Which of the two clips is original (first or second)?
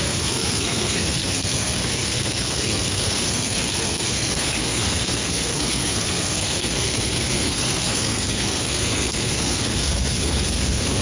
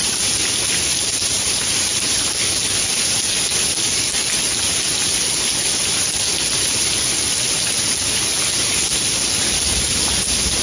second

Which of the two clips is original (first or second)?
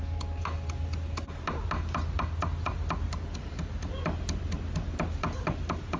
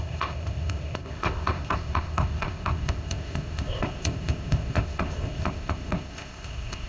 first